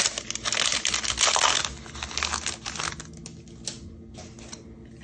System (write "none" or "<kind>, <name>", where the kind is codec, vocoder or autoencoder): none